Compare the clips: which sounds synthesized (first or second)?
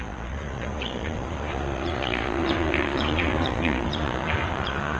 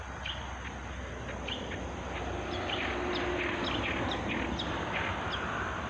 first